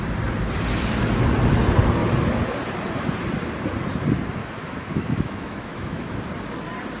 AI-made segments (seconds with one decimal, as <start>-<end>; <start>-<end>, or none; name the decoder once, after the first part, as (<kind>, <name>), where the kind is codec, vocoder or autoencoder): 4.4-6.2 (autoencoder, DAC-VAE)